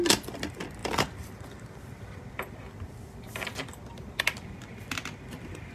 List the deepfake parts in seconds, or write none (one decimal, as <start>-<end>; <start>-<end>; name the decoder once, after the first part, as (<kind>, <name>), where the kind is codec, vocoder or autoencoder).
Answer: 0.8-4.2 (vocoder, BigVGAN v2)